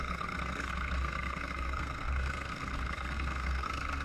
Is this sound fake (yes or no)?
yes